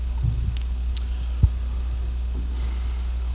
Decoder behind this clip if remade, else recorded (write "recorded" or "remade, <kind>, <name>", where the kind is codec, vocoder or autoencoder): recorded